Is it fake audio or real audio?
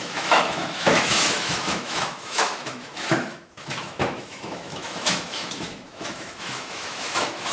fake